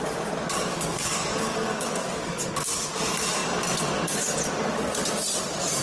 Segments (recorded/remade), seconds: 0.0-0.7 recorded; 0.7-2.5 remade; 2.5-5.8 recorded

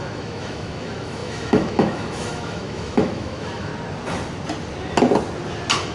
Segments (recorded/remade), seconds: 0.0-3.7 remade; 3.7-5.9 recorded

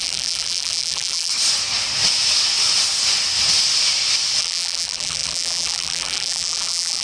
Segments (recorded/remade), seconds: 0.0-1.3 remade; 1.3-4.4 recorded; 4.4-7.0 remade